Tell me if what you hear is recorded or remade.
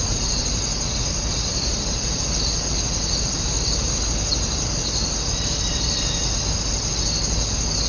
recorded